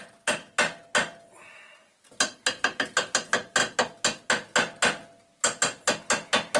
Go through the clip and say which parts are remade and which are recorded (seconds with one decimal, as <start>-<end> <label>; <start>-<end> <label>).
0.0-6.6 recorded